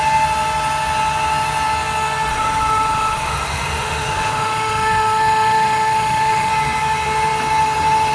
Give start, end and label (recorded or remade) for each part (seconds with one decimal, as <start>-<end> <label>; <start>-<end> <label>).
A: 0.0-2.3 recorded; 2.3-6.5 remade; 6.5-8.1 recorded